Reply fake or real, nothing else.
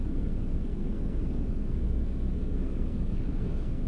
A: fake